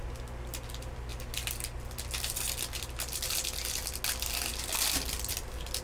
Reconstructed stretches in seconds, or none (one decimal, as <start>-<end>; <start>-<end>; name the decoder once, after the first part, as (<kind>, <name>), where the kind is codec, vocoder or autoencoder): none